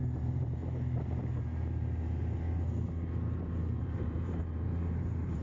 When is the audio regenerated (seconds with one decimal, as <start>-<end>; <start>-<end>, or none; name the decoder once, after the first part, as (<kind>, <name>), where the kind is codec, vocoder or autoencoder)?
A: 0.0-0.6 (vocoder, BigVGAN v2); 3.8-5.4